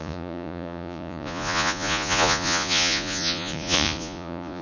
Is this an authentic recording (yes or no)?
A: no